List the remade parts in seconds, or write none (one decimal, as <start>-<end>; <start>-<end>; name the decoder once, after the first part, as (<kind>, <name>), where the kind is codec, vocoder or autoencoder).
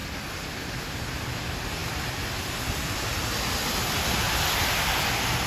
none